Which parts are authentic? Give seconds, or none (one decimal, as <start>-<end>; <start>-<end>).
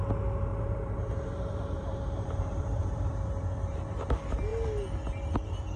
0.0-0.5; 3.3-5.8